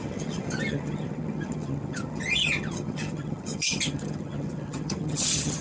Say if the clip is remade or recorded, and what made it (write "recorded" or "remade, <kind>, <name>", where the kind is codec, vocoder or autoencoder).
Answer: remade, vocoder, HiFi-GAN